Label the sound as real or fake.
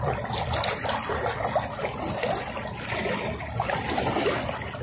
real